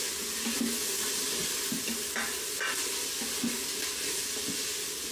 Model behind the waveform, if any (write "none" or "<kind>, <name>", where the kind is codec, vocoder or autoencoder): none